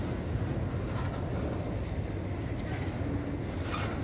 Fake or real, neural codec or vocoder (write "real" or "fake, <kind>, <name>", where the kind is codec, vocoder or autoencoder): real